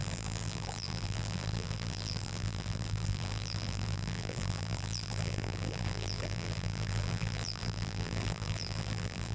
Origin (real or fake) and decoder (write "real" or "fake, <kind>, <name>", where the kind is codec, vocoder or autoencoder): fake, vocoder, BigVGAN v2